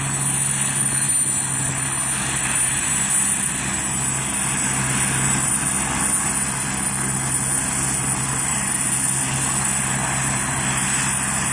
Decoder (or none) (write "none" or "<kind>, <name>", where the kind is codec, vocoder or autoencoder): none